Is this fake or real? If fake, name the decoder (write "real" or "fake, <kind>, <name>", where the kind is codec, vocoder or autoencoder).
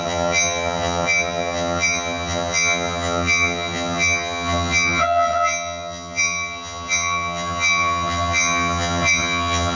fake, vocoder, HiFi-GAN